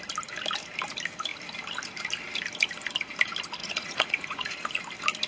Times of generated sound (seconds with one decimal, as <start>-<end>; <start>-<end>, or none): 3.6-4.5